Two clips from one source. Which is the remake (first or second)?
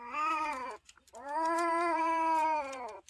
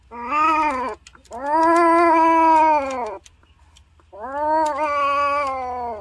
first